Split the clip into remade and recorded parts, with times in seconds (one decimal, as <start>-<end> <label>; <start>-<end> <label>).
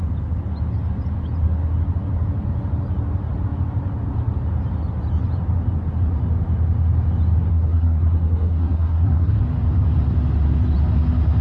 0.0-7.5 recorded; 7.5-9.4 remade; 9.4-11.4 recorded